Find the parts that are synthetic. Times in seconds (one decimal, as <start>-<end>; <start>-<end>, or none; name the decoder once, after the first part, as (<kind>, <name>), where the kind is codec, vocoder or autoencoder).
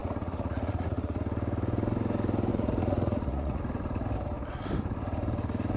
0.0-1.2 (vocoder, Vocos); 2.5-3.6